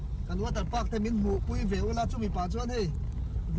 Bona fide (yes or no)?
yes